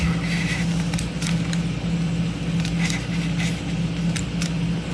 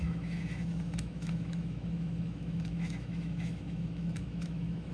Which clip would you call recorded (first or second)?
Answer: first